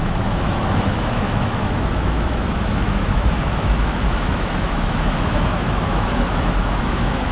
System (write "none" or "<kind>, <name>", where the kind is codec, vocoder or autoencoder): autoencoder, DAC-VAE